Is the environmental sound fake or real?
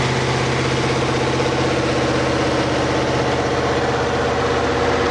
real